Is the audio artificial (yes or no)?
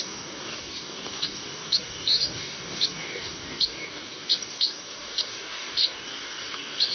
yes